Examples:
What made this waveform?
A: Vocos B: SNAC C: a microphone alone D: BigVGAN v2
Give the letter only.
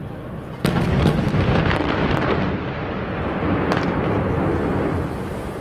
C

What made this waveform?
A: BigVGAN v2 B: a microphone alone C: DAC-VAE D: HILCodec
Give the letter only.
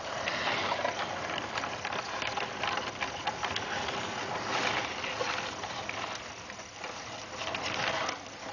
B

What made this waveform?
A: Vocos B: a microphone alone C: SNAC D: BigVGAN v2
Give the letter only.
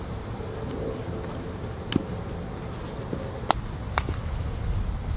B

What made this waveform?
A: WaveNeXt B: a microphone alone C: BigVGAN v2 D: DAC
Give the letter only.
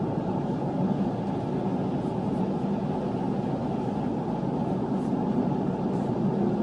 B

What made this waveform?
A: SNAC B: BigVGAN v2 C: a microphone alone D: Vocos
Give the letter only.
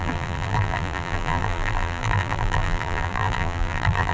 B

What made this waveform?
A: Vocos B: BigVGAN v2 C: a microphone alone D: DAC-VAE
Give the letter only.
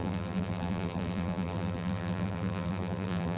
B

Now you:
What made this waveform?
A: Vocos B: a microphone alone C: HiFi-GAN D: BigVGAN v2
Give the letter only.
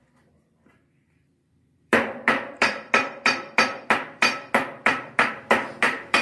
D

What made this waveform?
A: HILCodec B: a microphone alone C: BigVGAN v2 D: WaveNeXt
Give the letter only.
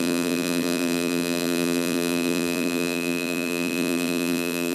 C